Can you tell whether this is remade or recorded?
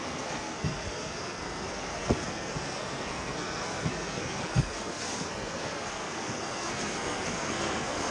remade